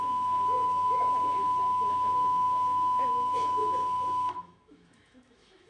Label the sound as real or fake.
fake